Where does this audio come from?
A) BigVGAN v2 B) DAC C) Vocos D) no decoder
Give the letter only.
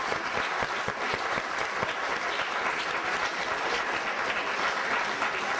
D